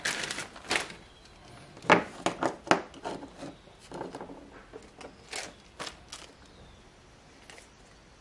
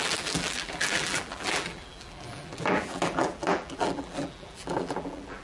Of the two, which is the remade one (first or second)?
second